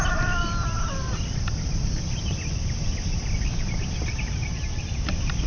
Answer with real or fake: fake